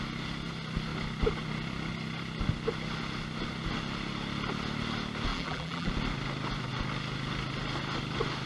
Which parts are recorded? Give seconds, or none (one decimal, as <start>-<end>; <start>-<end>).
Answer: 0.0-5.3; 5.9-8.5